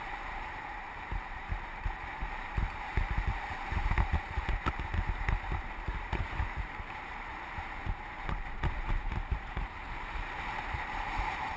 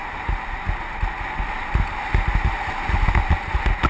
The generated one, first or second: first